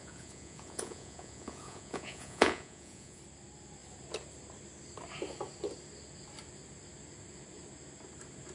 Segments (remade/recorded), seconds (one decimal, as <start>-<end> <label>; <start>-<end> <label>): 0.0-3.2 remade; 3.2-8.5 recorded